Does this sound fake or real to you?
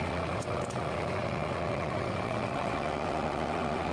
fake